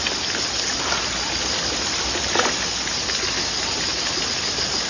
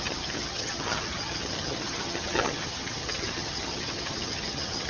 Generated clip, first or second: second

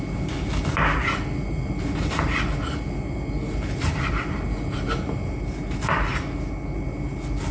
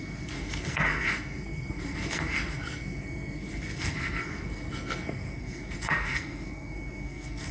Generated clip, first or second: second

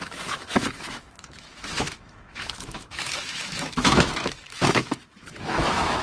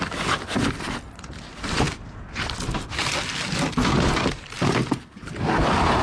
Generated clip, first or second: first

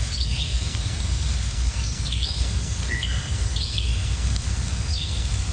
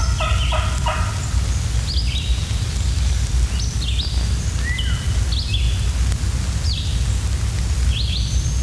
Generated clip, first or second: first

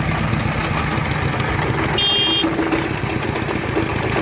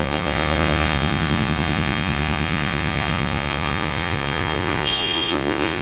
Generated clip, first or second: second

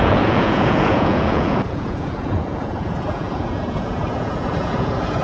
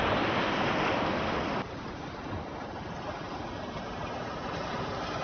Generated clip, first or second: first